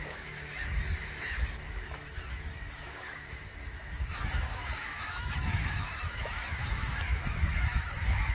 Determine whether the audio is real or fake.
fake